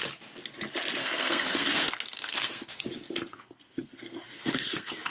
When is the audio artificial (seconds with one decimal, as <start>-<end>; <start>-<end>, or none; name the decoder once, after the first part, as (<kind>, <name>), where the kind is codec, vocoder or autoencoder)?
1.0-2.8 (codec, SNAC); 3.3-5.1